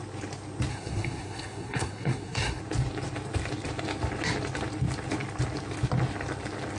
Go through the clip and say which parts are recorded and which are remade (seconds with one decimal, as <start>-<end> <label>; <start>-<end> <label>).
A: 0.0-0.7 recorded; 0.7-2.6 remade; 2.6-6.8 recorded